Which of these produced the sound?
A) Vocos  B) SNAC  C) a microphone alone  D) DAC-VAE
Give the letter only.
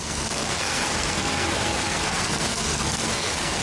B